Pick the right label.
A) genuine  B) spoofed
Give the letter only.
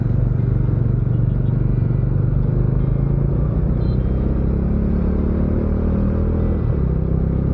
A